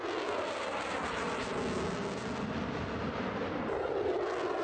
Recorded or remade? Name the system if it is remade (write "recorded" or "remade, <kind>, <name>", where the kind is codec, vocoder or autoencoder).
recorded